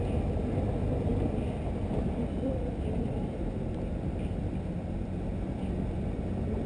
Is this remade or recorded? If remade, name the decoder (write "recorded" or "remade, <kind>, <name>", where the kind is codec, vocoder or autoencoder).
recorded